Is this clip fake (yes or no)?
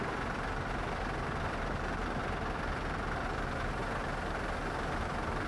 no